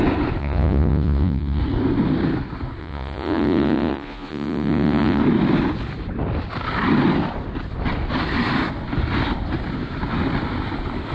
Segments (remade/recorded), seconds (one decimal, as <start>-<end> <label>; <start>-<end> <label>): 0.0-0.4 recorded; 0.4-1.6 remade; 1.6-2.8 recorded; 2.8-5.2 remade; 5.2-11.1 recorded